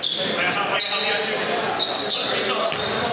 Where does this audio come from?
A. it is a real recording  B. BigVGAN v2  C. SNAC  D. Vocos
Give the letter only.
A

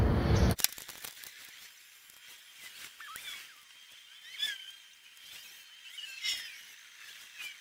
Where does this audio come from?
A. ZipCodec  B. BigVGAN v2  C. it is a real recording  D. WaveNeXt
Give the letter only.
C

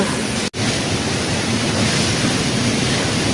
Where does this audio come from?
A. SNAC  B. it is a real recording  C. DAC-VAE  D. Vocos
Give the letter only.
B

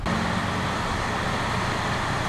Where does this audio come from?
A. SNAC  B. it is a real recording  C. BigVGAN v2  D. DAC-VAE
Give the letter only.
B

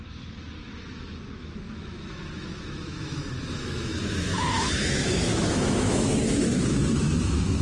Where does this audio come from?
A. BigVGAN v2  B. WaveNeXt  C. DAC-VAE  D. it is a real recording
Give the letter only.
C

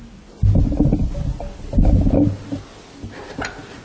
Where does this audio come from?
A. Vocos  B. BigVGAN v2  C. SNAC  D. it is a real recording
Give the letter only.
D